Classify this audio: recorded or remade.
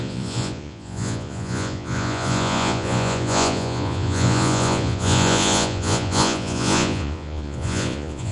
remade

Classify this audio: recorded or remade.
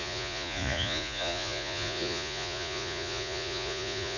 remade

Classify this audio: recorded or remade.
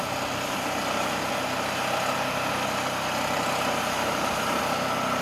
recorded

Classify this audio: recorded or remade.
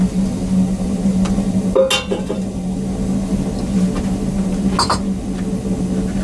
recorded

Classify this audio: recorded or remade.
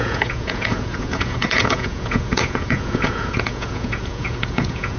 remade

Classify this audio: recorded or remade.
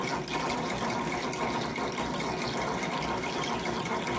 recorded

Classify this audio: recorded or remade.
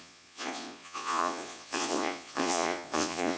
remade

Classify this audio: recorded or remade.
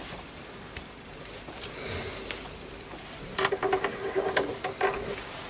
recorded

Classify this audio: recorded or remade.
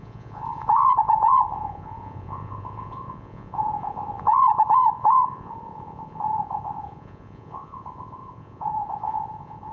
remade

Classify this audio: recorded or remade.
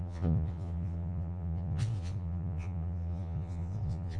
remade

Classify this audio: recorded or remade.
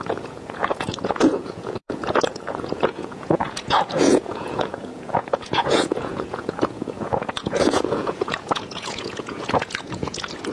remade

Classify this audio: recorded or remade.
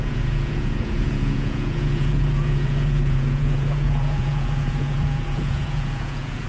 remade